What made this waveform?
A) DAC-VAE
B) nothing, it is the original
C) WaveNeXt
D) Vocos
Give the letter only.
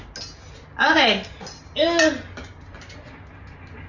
B